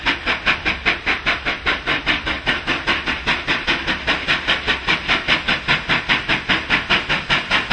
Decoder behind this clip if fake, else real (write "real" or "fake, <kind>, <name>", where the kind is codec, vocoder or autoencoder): real